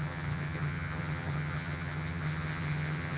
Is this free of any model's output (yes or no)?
no